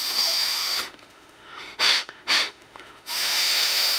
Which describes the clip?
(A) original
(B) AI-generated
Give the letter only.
B